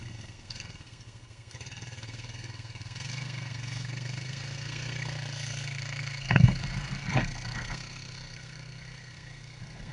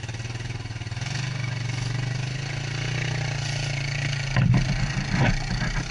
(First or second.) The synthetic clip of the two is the first